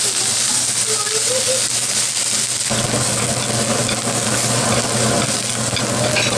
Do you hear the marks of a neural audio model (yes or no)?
no